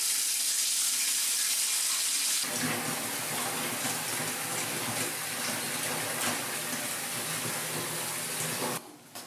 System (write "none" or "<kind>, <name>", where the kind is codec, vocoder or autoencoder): none